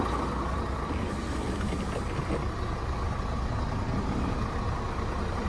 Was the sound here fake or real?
real